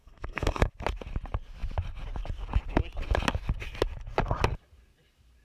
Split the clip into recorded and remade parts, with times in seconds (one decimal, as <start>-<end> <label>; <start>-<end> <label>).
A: 0.0-0.7 remade; 0.7-5.4 recorded